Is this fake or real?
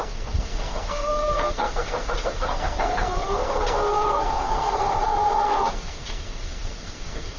fake